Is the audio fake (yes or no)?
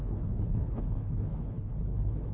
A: yes